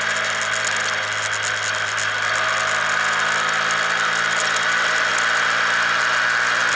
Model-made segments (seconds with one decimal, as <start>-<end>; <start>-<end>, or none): none